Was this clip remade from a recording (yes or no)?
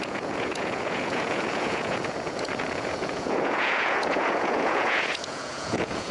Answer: yes